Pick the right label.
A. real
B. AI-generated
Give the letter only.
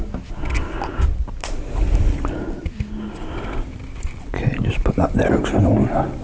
A